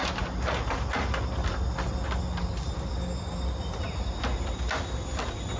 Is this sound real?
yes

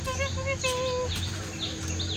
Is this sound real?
yes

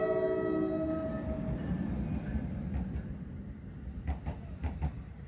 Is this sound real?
yes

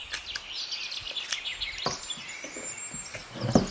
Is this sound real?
yes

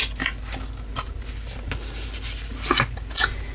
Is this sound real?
yes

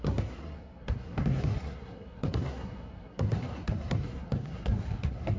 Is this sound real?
no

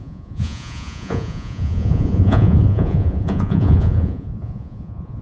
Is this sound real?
no